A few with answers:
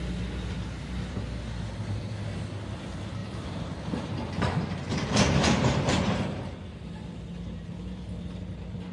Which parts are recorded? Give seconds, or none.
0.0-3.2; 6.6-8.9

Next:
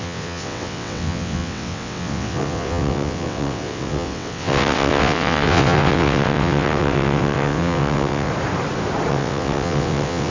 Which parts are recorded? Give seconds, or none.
8.3-9.1

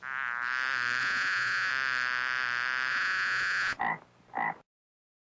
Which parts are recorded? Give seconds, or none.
0.0-1.0; 1.7-2.9; 3.8-5.2

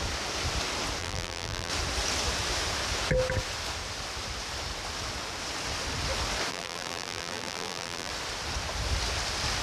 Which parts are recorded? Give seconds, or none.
0.0-1.0; 1.7-6.5; 8.1-9.6